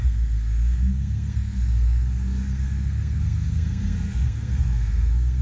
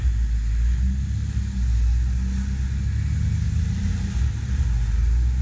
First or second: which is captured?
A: second